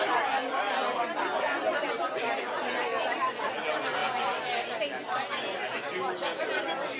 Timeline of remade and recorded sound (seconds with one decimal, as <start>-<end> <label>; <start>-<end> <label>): 0.0-7.0 recorded